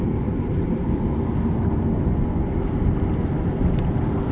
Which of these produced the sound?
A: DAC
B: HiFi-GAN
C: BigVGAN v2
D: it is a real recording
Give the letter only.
D